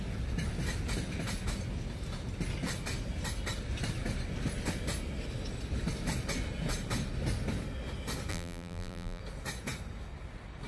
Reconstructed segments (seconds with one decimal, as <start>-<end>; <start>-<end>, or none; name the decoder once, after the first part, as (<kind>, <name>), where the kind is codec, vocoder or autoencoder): 8.3-9.2 (vocoder, BigVGAN v2)